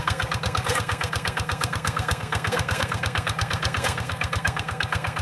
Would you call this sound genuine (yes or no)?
no